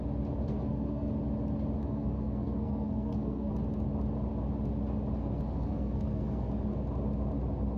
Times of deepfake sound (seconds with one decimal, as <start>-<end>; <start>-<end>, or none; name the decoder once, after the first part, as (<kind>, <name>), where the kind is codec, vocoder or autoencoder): 0.5-1.1 (codec, SNAC); 1.8-3.5; 5.2-6.5